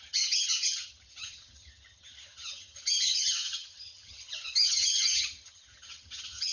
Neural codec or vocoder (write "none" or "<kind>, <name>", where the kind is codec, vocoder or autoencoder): vocoder, HiFi-GAN